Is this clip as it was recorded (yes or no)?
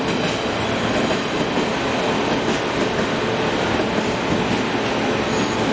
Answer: yes